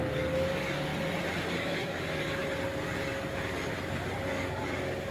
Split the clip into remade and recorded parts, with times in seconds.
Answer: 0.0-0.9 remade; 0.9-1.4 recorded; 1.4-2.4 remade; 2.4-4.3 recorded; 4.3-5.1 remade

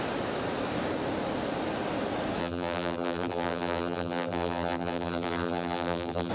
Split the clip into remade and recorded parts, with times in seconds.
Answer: 0.0-2.4 recorded; 2.4-6.3 remade